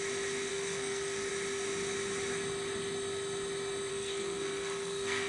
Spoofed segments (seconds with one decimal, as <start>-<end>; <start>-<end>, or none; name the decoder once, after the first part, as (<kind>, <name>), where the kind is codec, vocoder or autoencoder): 0.5-1.3 (codec, SNAC); 3.9-5.3